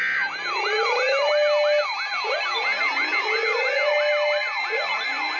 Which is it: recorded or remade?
recorded